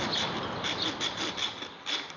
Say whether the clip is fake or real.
real